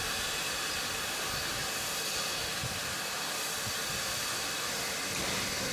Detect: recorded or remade recorded